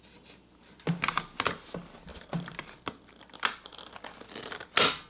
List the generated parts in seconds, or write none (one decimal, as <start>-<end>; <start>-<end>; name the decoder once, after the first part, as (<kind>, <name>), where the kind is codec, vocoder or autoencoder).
none